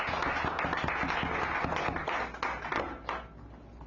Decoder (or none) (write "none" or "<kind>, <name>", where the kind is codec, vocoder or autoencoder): none